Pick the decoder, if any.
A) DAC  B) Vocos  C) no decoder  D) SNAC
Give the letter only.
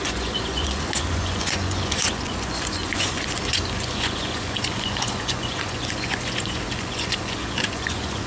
B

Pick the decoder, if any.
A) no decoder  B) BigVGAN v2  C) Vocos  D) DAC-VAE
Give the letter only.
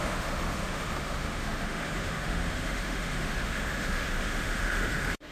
D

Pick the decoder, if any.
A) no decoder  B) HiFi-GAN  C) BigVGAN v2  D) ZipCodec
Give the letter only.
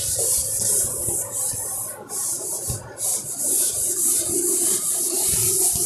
A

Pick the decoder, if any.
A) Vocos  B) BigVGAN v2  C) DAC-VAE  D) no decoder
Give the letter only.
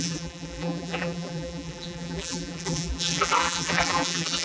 B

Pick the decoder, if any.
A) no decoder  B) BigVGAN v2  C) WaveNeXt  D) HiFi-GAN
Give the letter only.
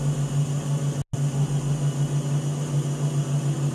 A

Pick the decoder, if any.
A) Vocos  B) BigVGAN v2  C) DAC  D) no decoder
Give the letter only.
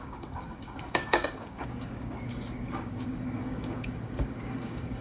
C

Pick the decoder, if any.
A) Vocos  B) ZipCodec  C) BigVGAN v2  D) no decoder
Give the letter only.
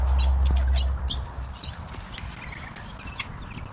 D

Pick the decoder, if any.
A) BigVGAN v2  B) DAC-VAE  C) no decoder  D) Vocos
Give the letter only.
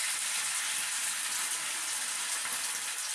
C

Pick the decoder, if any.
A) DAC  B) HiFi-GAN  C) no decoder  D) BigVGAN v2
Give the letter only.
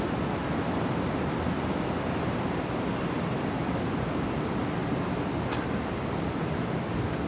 C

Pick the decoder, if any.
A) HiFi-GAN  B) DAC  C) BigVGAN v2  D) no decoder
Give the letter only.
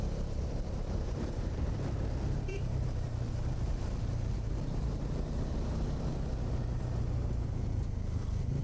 C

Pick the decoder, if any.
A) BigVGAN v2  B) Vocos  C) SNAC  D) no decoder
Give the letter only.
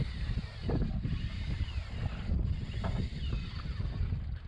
A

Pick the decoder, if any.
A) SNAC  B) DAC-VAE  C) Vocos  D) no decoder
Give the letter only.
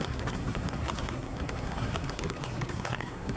A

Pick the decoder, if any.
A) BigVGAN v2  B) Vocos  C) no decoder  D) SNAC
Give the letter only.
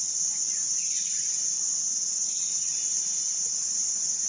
C